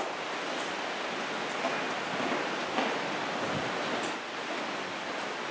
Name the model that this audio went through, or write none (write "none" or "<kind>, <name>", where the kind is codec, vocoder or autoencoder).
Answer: none